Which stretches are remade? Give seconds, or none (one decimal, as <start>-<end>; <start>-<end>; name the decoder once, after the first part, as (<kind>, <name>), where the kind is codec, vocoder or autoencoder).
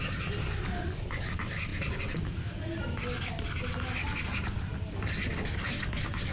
none